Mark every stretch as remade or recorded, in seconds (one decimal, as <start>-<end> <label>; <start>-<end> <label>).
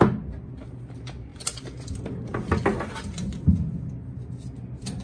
0.0-5.0 recorded